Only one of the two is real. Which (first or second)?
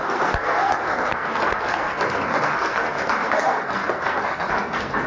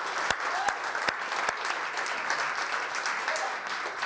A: second